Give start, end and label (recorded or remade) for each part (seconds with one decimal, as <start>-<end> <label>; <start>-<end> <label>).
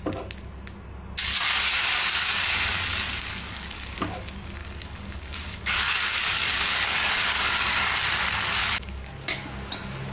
0.0-1.2 recorded; 1.2-4.0 remade; 4.0-4.6 recorded; 4.6-7.8 remade; 7.8-8.6 recorded; 8.6-9.7 remade; 9.7-10.1 recorded